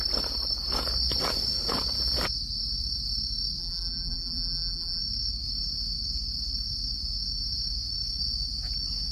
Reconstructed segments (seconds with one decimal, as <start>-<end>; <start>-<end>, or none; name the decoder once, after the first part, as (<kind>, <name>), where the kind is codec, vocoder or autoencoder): 3.6-5.0 (vocoder, BigVGAN v2)